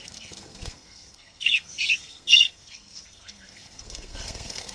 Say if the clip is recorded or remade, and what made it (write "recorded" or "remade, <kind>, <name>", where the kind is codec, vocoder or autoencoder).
remade, codec, SNAC